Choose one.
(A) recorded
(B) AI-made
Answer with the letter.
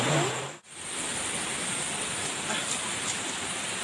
A